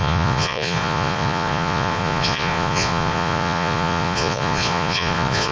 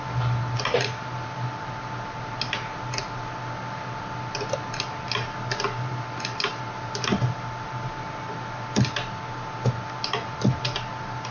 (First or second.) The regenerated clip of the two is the first